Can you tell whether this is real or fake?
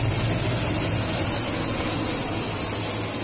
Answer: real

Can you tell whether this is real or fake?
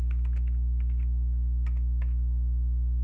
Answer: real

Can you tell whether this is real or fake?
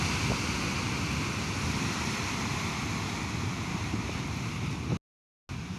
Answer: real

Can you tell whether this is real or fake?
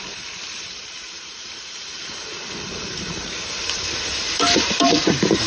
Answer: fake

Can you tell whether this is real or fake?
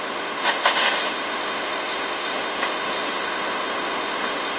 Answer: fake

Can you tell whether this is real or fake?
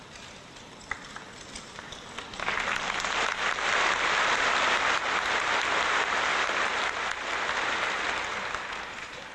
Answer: real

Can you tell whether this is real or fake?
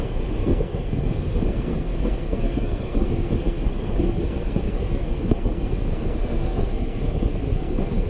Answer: fake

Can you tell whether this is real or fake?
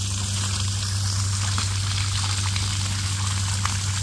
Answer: real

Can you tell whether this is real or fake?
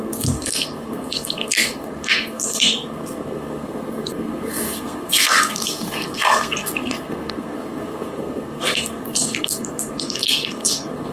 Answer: fake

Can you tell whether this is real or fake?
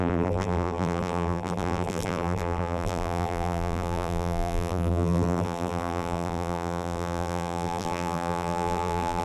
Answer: fake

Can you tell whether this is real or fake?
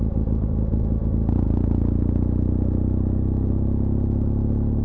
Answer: real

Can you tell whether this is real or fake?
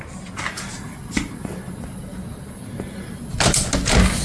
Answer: real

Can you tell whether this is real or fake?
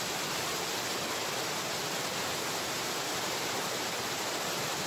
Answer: real